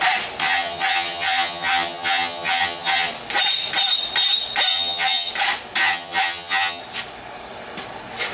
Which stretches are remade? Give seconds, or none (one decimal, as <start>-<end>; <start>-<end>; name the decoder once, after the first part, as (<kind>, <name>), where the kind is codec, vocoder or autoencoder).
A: 0.4-3.1 (vocoder, HiFi-GAN); 4.7-5.3; 5.8-6.8